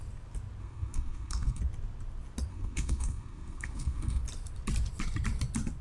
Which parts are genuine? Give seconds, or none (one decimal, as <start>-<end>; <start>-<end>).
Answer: 0.0-0.6; 1.6-2.5; 4.2-5.8